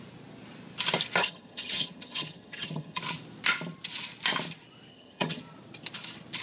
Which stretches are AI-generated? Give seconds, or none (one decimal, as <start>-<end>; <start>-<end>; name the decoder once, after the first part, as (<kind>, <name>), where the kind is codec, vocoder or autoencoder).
1.2-3.0 (vocoder, HiFi-GAN); 4.9-5.4